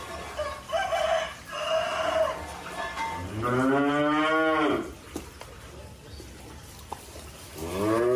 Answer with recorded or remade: recorded